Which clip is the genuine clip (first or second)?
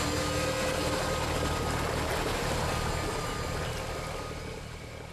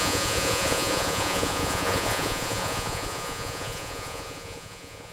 first